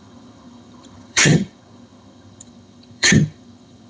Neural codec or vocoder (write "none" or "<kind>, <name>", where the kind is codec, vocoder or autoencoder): vocoder, HiFi-GAN